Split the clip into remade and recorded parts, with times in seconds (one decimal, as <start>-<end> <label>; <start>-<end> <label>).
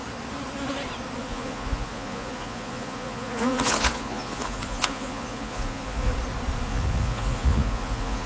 0.0-1.2 recorded; 1.2-6.1 remade; 6.1-6.7 recorded; 6.7-8.3 remade